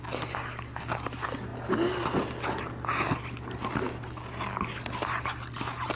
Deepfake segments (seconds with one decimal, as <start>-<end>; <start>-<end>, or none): none